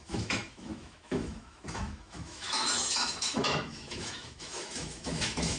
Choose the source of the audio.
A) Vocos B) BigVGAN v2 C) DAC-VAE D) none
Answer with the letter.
C